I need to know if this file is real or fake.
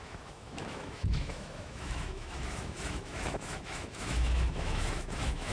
fake